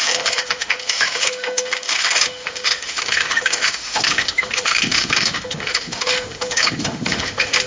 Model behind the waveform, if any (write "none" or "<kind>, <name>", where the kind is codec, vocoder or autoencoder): autoencoder, DAC-VAE